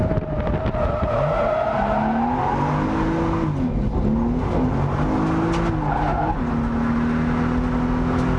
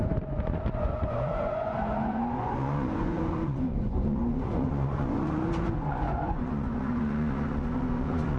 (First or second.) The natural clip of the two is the first